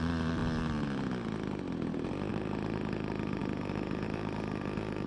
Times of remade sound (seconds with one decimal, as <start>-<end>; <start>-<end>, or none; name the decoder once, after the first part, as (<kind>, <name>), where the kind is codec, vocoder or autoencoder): 0.0-0.4 (vocoder, BigVGAN v2); 2.3-5.1